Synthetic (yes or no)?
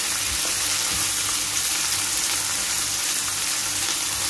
no